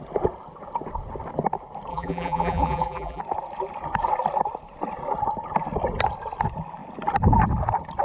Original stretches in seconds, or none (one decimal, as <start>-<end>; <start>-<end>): 0.0-1.9; 3.2-8.0

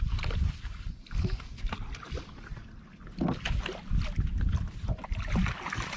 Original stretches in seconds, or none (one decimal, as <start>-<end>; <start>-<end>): 2.5-3.9

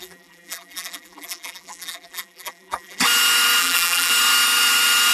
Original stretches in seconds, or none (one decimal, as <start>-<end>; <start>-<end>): 3.0-3.6; 4.1-5.1